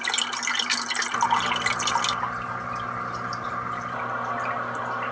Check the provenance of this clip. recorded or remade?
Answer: recorded